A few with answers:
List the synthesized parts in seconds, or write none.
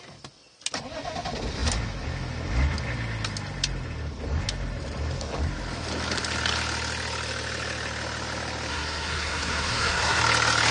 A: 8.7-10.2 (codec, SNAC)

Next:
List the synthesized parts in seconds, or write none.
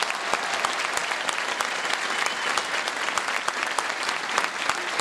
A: none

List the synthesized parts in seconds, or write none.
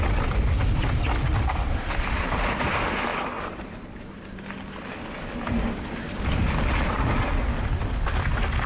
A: none